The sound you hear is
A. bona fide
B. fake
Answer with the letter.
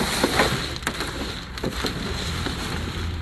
A